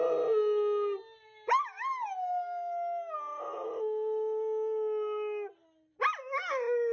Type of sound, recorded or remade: recorded